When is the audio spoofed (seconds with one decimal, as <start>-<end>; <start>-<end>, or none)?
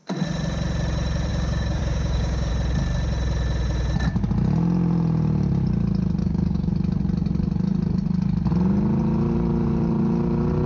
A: 1.3-2.5; 6.2-6.7